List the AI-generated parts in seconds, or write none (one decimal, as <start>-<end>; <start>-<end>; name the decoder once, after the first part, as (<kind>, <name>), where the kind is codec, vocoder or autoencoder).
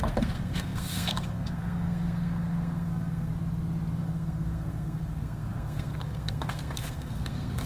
0.0-3.3 (codec, SNAC); 4.0-7.7